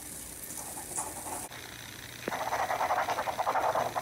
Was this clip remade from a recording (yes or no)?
no